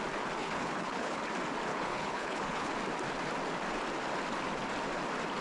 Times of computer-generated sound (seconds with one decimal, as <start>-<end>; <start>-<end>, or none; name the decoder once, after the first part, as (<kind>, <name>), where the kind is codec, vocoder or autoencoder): 0.4-1.2 (codec, HILCodec); 1.7-2.7